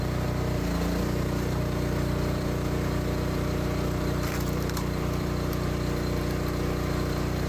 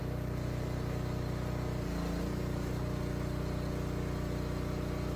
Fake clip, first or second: first